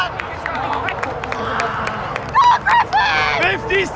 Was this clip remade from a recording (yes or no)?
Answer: no